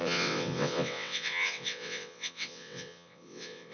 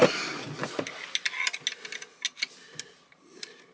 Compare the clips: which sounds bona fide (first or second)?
second